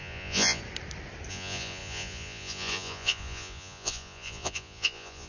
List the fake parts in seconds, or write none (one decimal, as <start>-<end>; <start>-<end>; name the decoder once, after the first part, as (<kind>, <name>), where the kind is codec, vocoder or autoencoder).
0.0-0.6 (vocoder, Vocos); 1.3-5.3